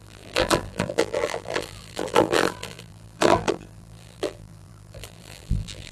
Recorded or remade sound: remade